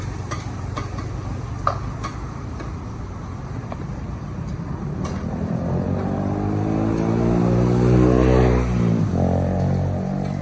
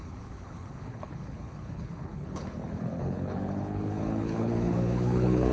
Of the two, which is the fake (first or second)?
second